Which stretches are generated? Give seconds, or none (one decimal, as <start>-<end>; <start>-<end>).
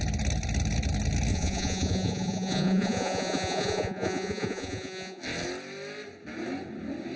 1.3-5.2